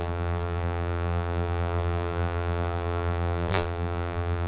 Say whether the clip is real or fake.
fake